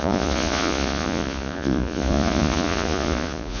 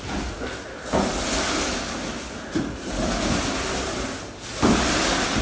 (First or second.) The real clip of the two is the second